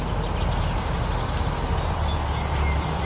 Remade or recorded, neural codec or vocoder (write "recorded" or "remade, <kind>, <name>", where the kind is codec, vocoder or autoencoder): recorded